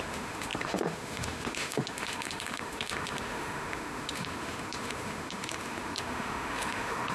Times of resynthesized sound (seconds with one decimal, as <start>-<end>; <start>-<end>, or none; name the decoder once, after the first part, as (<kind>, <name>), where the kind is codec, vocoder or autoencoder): 0.0-7.1 (autoencoder, DAC-VAE)